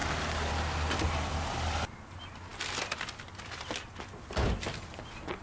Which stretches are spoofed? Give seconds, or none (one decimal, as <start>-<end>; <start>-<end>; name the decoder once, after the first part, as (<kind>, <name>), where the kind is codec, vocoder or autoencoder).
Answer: none